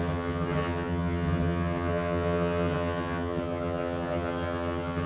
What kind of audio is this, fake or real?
fake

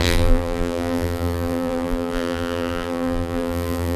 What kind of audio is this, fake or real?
fake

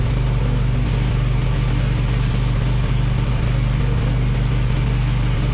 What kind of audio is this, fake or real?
real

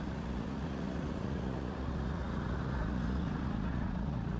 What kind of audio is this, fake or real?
fake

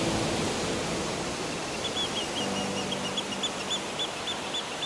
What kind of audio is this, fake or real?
real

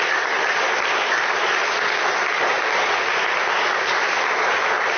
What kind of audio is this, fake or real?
real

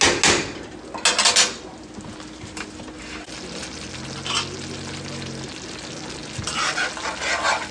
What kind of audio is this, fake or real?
real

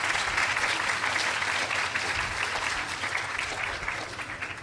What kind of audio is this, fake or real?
real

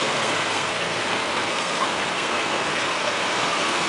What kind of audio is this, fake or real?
fake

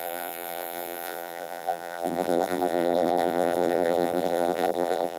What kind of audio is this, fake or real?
fake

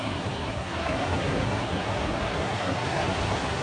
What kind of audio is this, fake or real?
fake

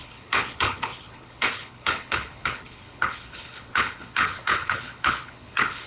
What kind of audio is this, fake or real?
fake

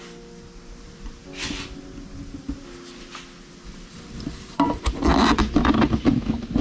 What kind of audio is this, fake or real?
real